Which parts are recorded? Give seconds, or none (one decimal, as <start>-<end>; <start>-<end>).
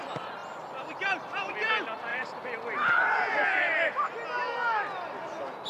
0.0-2.1; 4.1-5.7